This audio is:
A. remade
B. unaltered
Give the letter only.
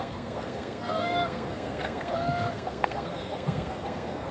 A